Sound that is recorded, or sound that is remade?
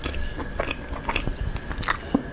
recorded